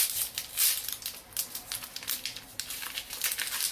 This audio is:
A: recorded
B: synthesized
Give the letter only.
A